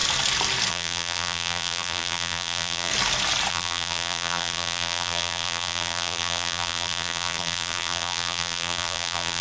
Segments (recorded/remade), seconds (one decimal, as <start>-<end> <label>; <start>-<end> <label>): 0.0-0.7 recorded; 0.7-2.9 remade; 2.9-3.5 recorded; 3.5-9.4 remade